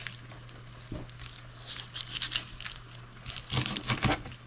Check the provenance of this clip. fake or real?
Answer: real